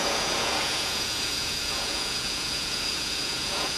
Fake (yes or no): yes